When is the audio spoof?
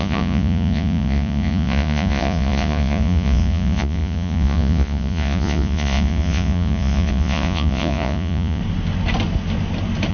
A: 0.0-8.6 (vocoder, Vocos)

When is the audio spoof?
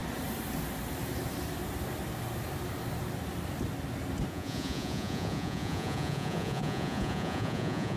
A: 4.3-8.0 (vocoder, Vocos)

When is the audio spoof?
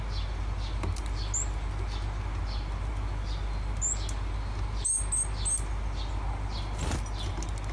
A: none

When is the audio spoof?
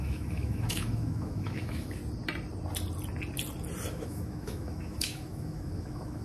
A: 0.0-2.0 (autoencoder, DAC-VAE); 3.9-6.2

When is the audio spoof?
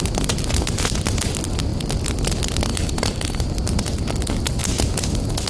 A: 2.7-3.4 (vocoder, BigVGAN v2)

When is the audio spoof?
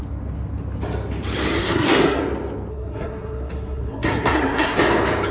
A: 1.6-2.2 (codec, SNAC); 2.7-4.8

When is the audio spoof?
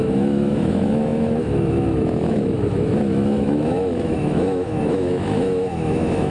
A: 0.0-6.3 (autoencoder, DAC-VAE)